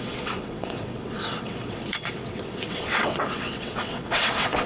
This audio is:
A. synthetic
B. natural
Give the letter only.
A